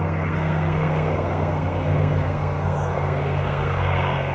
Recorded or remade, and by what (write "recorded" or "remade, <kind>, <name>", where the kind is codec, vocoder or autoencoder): remade, codec, SNAC